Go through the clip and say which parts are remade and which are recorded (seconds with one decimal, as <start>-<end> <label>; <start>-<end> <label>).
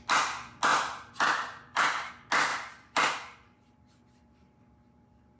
0.0-0.7 recorded; 0.7-2.1 remade; 2.1-2.5 recorded; 2.5-4.6 remade; 4.6-5.4 recorded